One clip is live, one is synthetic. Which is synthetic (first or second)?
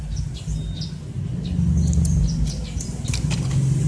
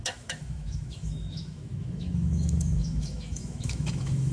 second